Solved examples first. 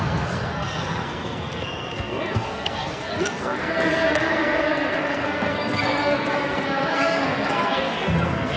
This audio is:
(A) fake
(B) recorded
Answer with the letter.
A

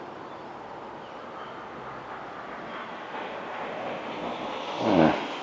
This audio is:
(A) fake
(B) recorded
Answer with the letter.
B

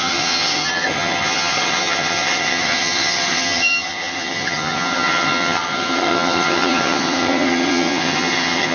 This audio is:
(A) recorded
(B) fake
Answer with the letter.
B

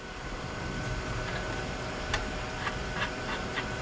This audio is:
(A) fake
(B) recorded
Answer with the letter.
A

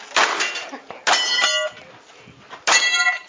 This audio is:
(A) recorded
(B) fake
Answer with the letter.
A